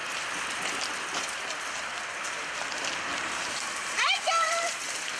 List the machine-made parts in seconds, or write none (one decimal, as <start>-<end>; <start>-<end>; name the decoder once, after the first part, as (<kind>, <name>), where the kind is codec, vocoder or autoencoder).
3.1-4.6 (vocoder, BigVGAN v2)